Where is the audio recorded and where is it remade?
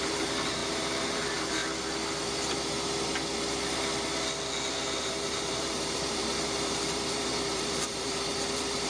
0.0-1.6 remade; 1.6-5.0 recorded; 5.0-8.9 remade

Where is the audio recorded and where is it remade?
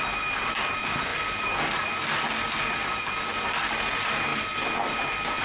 0.0-1.1 recorded; 1.1-3.3 remade; 3.3-4.3 recorded; 4.3-5.4 remade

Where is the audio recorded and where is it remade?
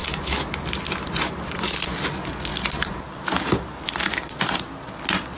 0.0-1.7 remade; 1.7-2.5 recorded; 2.5-4.4 remade; 4.4-5.4 recorded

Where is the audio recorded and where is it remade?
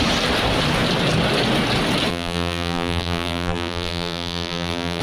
0.0-2.1 recorded; 2.1-5.0 remade